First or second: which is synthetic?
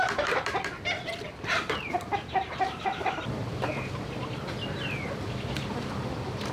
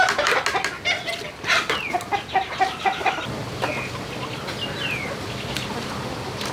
first